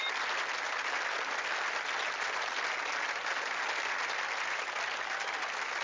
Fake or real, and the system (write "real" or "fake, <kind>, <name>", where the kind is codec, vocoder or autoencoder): real